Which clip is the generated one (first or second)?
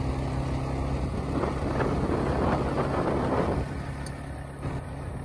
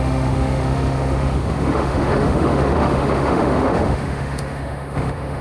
second